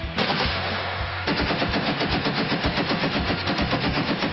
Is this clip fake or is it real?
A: fake